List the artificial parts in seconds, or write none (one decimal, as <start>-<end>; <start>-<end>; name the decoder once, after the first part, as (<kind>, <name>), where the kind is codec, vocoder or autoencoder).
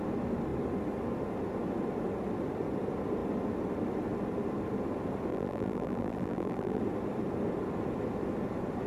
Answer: 5.3-6.8 (vocoder, BigVGAN v2)